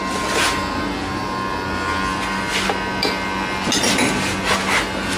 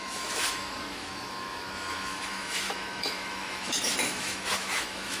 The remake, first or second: second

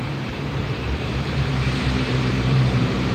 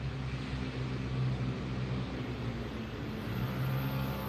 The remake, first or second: first